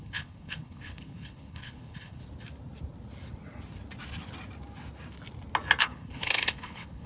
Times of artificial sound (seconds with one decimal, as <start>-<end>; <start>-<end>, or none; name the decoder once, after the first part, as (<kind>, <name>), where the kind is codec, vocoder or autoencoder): 0.0-2.2 (codec, HILCodec); 5.8-7.1